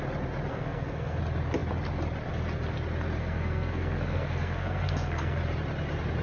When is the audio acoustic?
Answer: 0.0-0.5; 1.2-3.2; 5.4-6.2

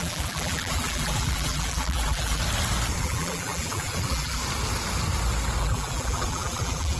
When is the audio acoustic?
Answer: 2.4-3.0; 4.4-5.6

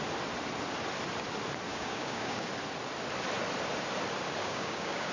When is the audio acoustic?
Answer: 0.0-1.7; 2.5-4.4

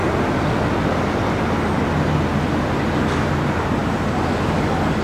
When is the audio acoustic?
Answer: 0.0-5.0

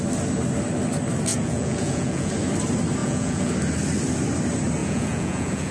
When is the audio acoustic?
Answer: 0.0-1.3; 2.3-3.0; 3.5-4.8

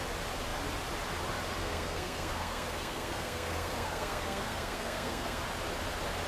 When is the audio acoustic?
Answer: 0.0-1.6; 5.4-6.3

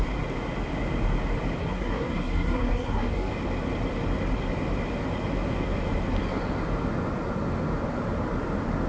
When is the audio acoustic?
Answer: 0.0-1.6; 3.3-8.9